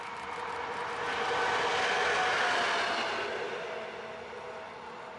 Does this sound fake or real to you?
real